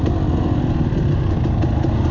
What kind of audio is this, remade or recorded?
recorded